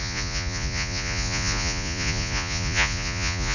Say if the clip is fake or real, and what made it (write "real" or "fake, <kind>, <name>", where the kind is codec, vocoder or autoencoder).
fake, vocoder, Vocos